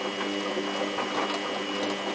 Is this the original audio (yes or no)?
yes